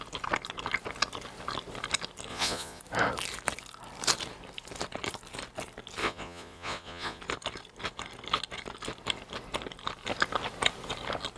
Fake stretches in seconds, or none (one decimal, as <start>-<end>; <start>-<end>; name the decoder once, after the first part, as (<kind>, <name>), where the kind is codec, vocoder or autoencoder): 2.3-2.8 (vocoder, Vocos); 6.0-7.2